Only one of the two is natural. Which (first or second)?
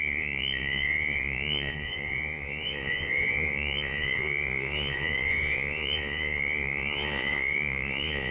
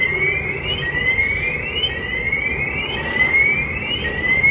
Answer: second